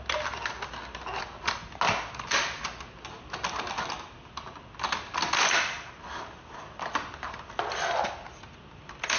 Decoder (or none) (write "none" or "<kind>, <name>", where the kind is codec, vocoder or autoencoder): none